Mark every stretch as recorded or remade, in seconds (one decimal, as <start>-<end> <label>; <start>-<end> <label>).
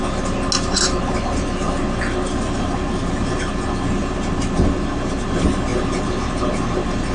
0.0-7.1 recorded